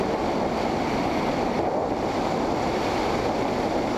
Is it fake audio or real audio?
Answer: real